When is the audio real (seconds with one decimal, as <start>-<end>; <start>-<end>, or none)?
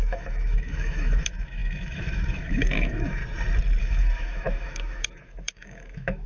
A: 3.2-3.8